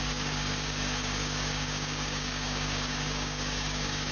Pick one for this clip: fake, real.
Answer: fake